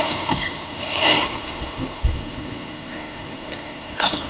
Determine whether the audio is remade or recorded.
remade